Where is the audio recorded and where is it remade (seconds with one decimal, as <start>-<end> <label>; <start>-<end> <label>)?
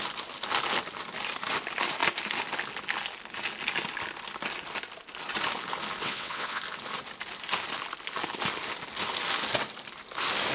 0.0-6.0 recorded; 6.0-6.6 remade; 6.6-10.5 recorded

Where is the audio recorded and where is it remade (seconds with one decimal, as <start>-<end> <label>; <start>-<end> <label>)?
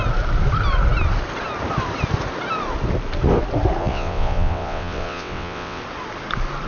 0.0-3.8 recorded; 3.8-5.8 remade; 5.8-6.7 recorded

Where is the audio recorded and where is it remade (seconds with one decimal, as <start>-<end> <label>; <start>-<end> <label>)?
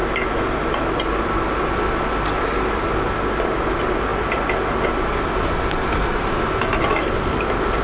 0.0-7.8 recorded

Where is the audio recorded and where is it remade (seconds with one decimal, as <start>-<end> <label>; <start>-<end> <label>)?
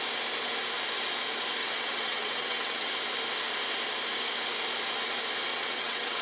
0.0-1.6 recorded; 1.6-2.9 remade; 2.9-5.5 recorded; 5.5-6.2 remade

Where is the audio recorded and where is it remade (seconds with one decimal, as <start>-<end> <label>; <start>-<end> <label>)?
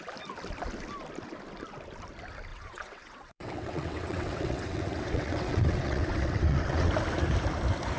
0.0-2.5 recorded; 2.5-6.9 remade; 6.9-8.0 recorded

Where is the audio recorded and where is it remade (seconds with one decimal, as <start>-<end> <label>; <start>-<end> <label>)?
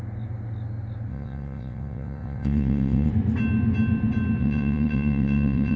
0.0-1.1 recorded; 1.1-3.1 remade; 3.1-4.4 recorded; 4.4-5.8 remade